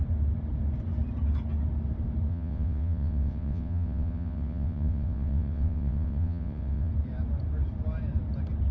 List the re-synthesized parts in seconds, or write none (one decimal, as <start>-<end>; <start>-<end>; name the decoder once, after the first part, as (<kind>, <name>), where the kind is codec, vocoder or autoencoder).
2.3-6.9 (vocoder, WaveNeXt)